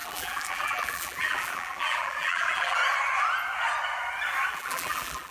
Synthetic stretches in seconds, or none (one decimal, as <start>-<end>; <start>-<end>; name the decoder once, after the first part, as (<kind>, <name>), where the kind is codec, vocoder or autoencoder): 0.0-2.8 (vocoder, BigVGAN v2); 4.5-5.3